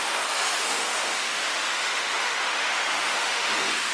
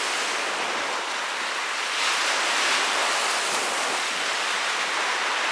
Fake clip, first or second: first